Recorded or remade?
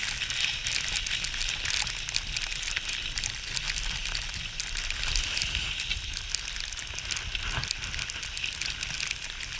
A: recorded